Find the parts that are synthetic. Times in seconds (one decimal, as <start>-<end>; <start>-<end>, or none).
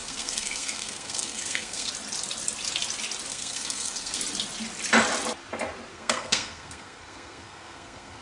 0.0-1.9; 3.3-4.2; 5.9-8.2